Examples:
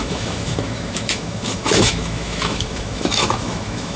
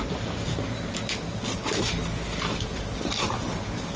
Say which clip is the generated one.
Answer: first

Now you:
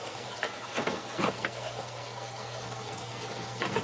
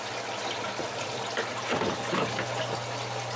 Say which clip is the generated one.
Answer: first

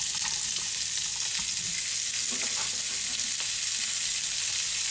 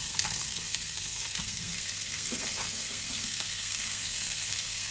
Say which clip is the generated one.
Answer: second